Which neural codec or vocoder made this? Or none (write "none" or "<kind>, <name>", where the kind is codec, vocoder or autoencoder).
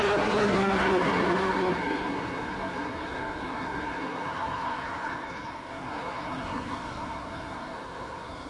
codec, SNAC